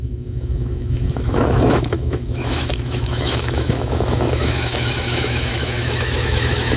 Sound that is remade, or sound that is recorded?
remade